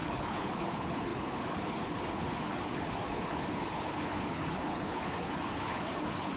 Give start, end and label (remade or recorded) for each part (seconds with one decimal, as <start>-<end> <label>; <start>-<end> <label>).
0.0-6.4 remade